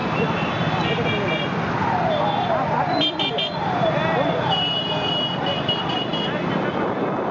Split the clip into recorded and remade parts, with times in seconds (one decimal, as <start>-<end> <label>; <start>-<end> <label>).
0.0-7.3 recorded